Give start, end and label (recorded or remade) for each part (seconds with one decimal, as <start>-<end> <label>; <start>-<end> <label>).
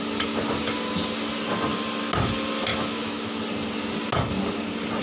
0.0-2.7 recorded; 2.7-3.4 remade; 3.4-5.0 recorded